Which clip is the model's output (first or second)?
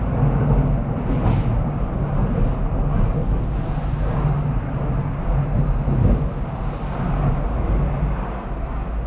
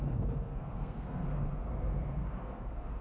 second